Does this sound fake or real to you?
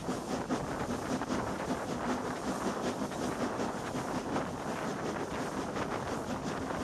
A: real